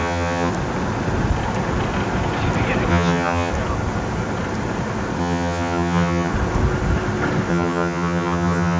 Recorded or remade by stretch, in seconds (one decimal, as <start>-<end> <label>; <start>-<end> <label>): 0.0-0.5 remade; 0.5-2.9 recorded; 2.9-3.5 remade; 3.5-5.2 recorded; 5.2-6.3 remade; 6.3-7.5 recorded; 7.5-8.8 remade